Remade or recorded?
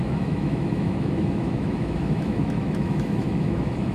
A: remade